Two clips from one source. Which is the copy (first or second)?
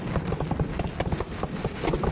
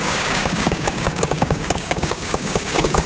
second